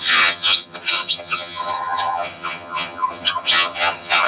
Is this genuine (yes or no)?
no